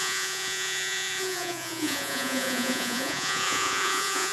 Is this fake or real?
fake